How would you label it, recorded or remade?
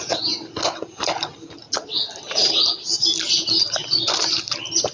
recorded